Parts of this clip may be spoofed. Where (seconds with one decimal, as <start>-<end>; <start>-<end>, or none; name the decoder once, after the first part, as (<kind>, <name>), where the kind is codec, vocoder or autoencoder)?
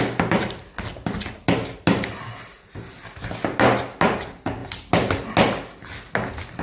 none